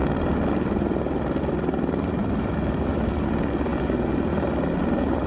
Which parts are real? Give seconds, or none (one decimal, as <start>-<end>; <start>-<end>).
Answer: 0.0-2.2; 2.9-5.3